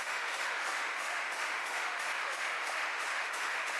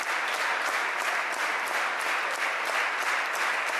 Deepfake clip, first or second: first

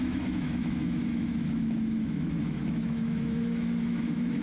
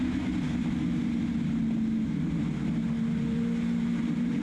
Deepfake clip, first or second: first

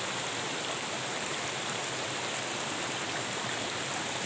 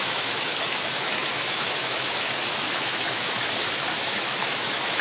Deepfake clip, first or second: second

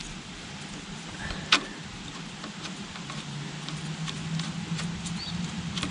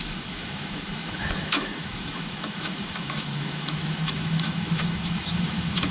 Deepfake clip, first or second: second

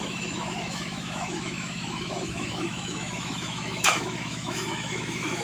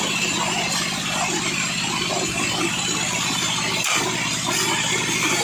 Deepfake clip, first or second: first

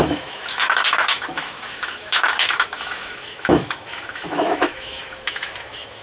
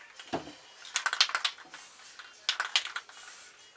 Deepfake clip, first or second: first